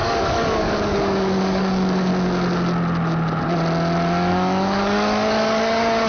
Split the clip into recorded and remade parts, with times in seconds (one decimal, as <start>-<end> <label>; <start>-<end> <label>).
0.0-2.1 remade; 2.1-4.3 recorded; 4.3-6.1 remade

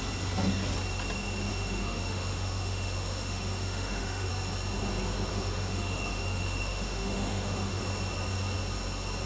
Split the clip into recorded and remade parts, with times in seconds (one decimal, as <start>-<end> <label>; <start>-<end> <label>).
0.0-1.5 recorded; 1.5-4.3 remade; 4.3-5.3 recorded; 5.3-7.8 remade; 7.8-9.3 recorded

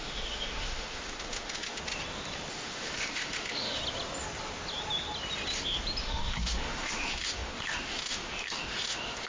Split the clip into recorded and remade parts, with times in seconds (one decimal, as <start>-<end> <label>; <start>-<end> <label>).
0.0-1.8 remade; 1.8-2.5 recorded; 2.5-3.8 remade; 3.8-6.0 recorded; 6.0-9.3 remade

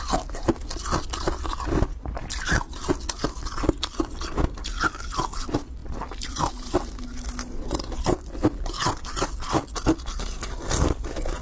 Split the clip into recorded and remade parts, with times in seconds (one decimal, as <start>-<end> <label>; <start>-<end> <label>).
0.0-11.4 recorded

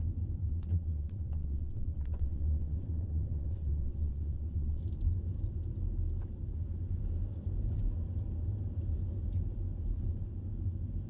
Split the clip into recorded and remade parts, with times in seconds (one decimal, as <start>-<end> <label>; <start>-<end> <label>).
0.0-0.4 recorded; 0.4-4.8 remade; 4.8-11.1 recorded

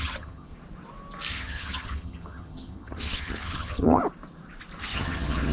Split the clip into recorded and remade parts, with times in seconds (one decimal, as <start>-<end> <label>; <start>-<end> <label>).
0.0-0.5 remade; 0.5-1.3 recorded; 1.3-4.0 remade; 4.0-4.8 recorded; 4.8-5.5 remade

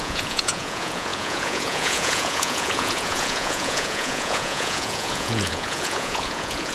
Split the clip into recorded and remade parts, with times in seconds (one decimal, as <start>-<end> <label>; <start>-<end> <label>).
0.0-6.7 remade

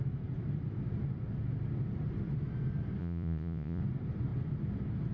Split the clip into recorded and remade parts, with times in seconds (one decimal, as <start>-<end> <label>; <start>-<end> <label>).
0.0-3.0 recorded; 3.0-3.8 remade; 3.8-5.1 recorded